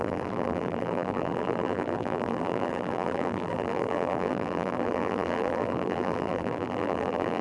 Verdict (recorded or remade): remade